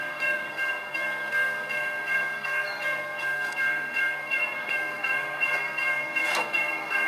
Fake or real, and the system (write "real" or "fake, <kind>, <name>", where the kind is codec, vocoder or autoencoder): fake, codec, SNAC